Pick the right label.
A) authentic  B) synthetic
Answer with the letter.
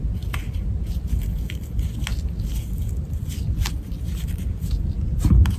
A